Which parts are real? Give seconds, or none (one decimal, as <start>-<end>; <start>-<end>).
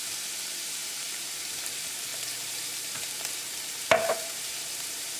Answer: none